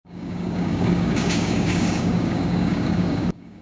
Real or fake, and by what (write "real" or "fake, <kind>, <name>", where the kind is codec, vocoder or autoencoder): fake, codec, DAC